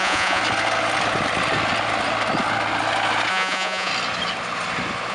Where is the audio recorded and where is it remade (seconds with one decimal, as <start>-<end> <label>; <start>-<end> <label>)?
0.0-0.4 remade; 0.4-3.3 recorded; 3.3-3.9 remade; 3.9-5.1 recorded